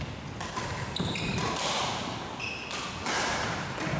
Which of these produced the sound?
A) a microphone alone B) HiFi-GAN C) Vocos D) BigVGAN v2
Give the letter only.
A